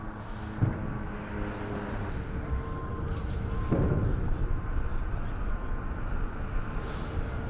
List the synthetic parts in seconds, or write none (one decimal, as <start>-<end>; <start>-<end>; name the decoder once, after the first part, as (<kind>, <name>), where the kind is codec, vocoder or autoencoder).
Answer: none